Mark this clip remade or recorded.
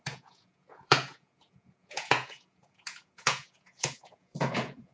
remade